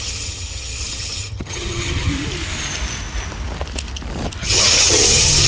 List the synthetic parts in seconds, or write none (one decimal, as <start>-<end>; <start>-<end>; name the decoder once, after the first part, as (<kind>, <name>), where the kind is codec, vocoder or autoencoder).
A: 0.0-2.1 (vocoder, HiFi-GAN); 4.4-5.5